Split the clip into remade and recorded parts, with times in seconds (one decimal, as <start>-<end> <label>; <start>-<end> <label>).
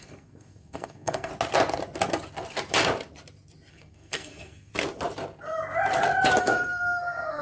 0.0-1.3 remade; 1.3-3.7 recorded; 3.7-4.7 remade; 4.7-6.4 recorded; 6.4-7.4 remade